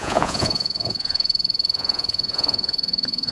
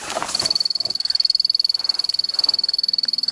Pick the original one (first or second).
second